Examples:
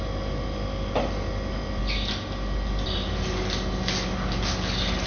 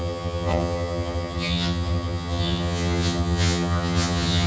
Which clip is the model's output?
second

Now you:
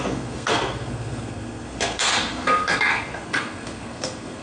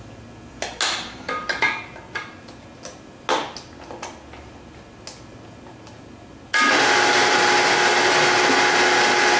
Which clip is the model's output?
first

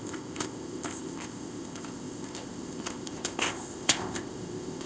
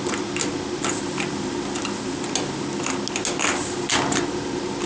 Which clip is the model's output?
first